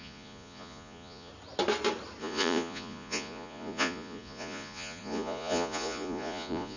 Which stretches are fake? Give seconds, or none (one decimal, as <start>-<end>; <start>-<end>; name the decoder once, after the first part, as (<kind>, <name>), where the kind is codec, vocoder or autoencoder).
0.0-1.3 (vocoder, Vocos); 2.2-6.8